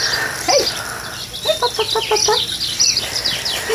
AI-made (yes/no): no